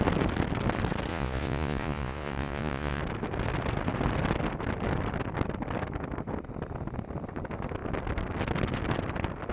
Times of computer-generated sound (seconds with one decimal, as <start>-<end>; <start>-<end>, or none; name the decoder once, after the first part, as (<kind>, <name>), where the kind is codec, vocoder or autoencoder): 1.1-3.0 (vocoder, Vocos)